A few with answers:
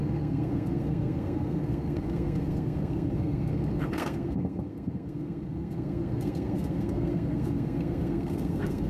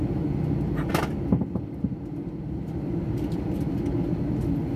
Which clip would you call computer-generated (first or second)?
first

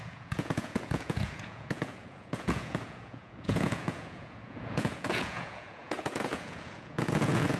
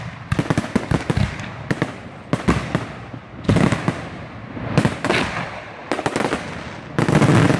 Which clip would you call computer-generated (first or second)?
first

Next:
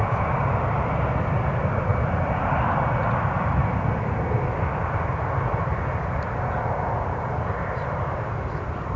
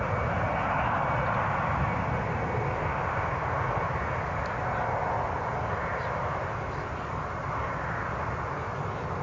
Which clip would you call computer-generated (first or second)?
first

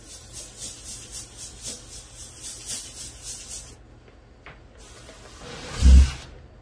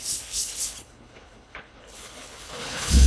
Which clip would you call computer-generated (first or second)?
second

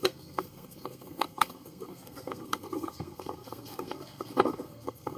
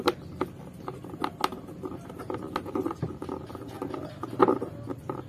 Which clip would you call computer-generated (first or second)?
first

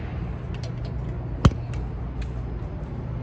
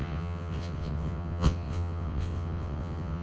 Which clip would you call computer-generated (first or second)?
second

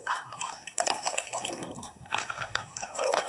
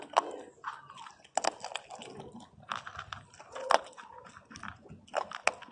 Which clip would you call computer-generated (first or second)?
first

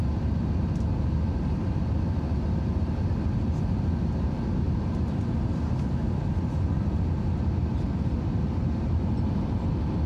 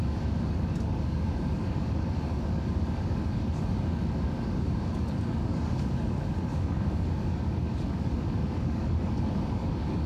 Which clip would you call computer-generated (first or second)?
second